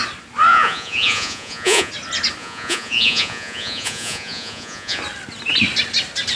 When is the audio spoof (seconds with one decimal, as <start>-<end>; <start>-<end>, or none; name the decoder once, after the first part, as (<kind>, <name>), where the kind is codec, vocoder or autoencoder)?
0.5-1.9 (vocoder, Vocos); 2.4-5.0